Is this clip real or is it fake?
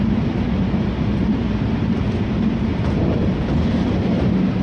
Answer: real